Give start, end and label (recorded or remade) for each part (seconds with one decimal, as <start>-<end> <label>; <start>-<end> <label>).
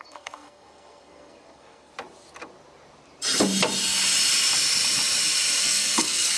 0.0-1.9 remade; 1.9-5.6 recorded; 5.6-6.4 remade